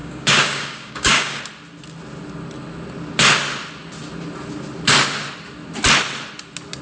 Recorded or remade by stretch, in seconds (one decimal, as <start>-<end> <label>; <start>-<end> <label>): 0.0-1.4 remade; 1.4-6.8 recorded